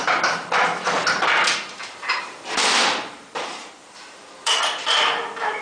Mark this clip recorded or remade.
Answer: remade